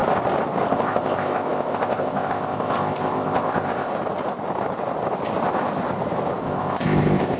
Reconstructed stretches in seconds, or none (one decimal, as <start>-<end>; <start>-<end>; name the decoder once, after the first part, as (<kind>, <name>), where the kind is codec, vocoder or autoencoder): 0.7-3.9 (codec, ZipCodec); 6.4-7.4